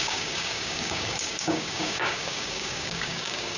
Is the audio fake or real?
fake